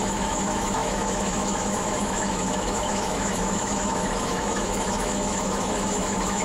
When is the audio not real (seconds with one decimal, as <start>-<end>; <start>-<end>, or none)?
0.0-6.4